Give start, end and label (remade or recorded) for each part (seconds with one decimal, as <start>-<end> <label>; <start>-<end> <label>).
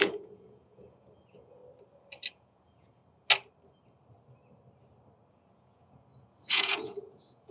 0.0-1.6 remade; 1.6-2.3 recorded; 2.3-3.0 remade; 3.0-5.3 recorded; 5.3-7.5 remade